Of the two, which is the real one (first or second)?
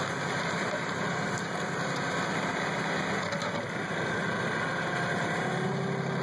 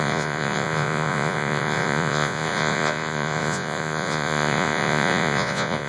first